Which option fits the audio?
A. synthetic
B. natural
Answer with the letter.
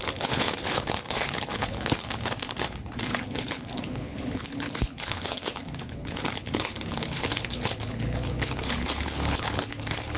A